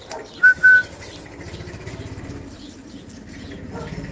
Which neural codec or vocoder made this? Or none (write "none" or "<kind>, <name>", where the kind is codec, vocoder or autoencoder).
none